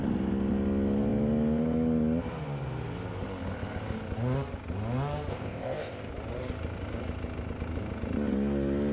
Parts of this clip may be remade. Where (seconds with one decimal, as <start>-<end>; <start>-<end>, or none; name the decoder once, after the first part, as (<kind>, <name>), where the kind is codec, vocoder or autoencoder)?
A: 5.3-6.1 (codec, ZipCodec)

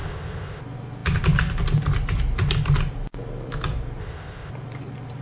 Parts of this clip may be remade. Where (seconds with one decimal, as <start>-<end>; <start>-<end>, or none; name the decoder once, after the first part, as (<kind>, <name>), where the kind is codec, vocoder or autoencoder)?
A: 0.0-0.6 (codec, ZipCodec); 4.0-4.5